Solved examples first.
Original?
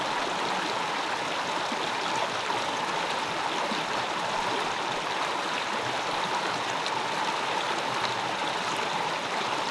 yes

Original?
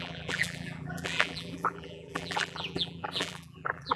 no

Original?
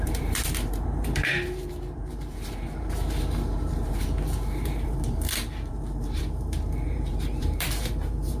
no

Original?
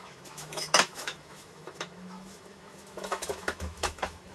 no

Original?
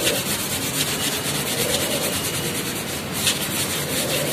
yes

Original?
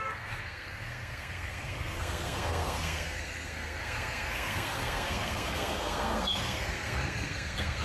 no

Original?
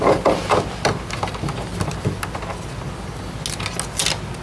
yes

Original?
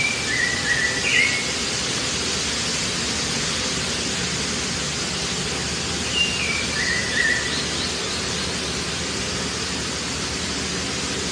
yes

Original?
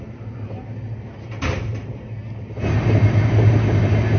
yes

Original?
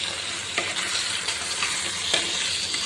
yes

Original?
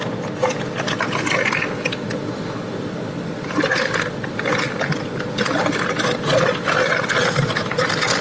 yes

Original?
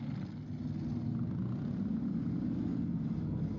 yes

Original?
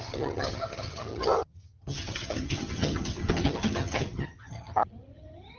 no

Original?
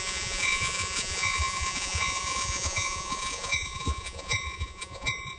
no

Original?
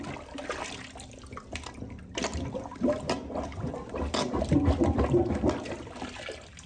yes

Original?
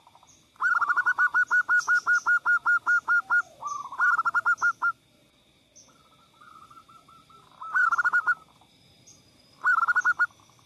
yes